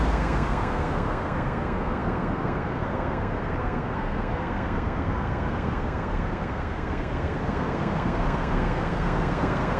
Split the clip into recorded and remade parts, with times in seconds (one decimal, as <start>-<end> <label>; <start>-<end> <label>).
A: 0.0-9.8 remade